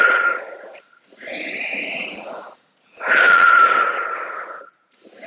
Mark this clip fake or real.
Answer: fake